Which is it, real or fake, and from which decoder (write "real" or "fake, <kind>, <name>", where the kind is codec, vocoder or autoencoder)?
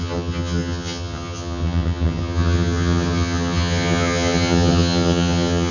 fake, vocoder, HiFi-GAN